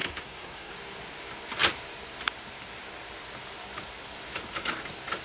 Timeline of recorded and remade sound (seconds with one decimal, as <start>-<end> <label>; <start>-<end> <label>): 0.0-0.7 remade; 0.7-5.2 recorded